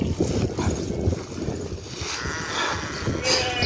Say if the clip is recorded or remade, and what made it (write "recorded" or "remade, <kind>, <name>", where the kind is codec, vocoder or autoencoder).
recorded